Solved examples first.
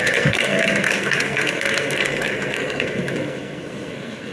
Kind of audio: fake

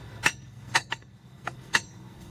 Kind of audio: fake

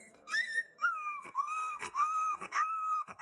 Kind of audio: fake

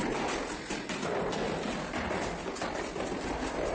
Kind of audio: real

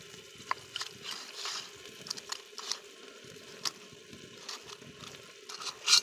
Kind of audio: real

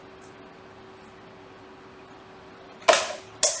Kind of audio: real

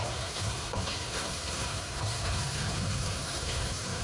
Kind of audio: fake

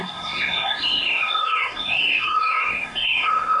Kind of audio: fake